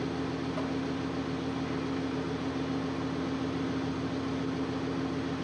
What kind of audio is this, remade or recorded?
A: recorded